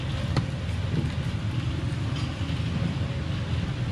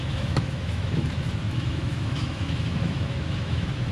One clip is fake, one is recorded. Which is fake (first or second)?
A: second